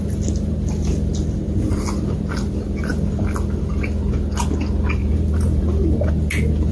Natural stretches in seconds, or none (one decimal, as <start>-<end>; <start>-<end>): 0.0-5.0; 6.1-6.7